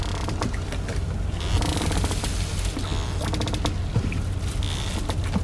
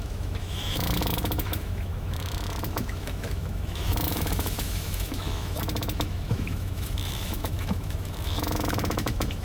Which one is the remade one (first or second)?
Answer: second